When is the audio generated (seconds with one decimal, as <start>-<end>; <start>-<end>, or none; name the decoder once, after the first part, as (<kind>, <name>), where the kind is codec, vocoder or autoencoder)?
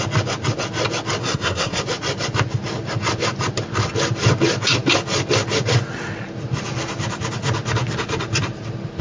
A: 1.2-1.8 (codec, SNAC)